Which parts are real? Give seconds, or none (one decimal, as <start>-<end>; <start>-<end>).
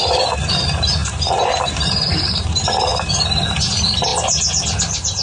2.9-3.5; 4.1-4.8